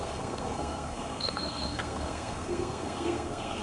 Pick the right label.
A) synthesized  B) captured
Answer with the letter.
A